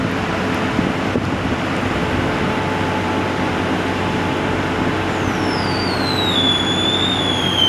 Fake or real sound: real